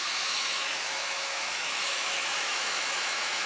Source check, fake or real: fake